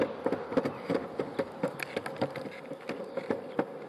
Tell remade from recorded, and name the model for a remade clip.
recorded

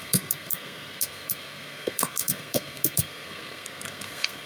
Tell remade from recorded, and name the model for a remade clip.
remade, codec, SNAC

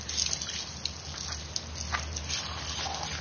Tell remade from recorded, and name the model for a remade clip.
recorded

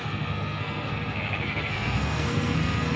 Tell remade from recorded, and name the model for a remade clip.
remade, codec, SNAC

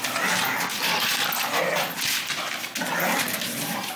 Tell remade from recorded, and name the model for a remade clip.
recorded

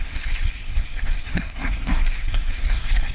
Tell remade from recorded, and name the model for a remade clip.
remade, codec, SNAC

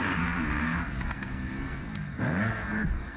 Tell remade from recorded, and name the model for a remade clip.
remade, codec, SNAC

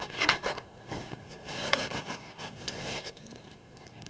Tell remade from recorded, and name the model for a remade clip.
remade, codec, SNAC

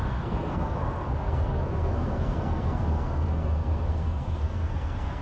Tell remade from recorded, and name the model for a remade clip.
remade, codec, SNAC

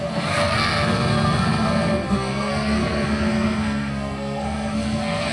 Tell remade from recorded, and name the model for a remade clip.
remade, codec, SNAC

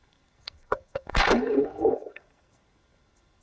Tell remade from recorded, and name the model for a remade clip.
remade, codec, SNAC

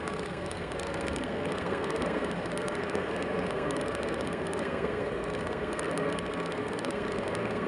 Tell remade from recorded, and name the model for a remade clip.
remade, codec, SNAC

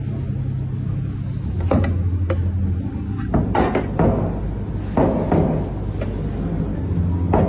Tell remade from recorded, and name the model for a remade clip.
recorded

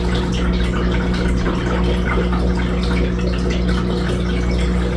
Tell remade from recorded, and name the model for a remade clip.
recorded